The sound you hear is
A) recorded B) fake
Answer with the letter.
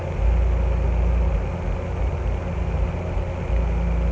A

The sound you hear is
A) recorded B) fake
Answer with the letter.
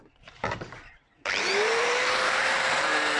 B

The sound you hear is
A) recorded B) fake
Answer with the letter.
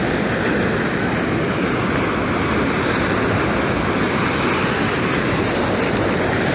A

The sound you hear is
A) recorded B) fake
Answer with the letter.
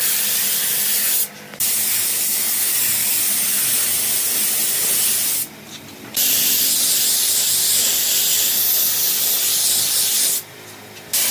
A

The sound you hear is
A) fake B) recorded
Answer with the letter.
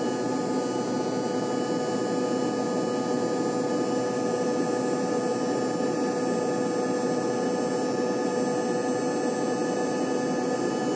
B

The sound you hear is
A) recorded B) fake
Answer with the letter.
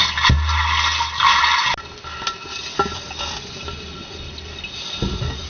A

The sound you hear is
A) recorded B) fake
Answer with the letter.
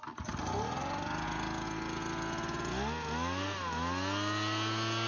A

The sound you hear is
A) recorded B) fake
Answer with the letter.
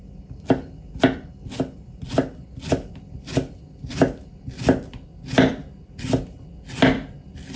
A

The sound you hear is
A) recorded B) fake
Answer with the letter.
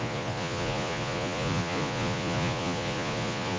B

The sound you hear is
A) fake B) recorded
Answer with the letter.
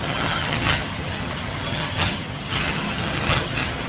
A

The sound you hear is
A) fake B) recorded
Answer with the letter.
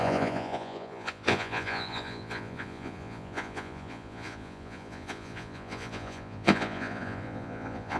A